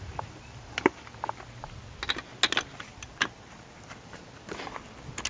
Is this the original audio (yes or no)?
yes